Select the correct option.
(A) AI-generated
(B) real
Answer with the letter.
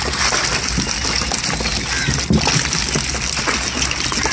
B